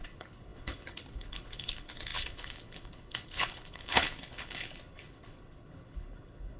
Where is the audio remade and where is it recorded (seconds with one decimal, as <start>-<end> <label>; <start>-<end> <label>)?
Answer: 0.0-6.6 remade